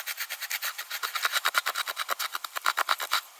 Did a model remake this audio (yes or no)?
no